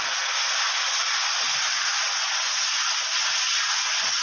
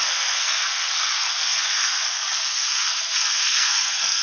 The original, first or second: first